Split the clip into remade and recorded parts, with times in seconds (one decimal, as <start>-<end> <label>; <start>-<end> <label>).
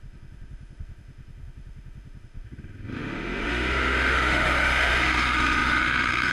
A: 0.0-6.3 remade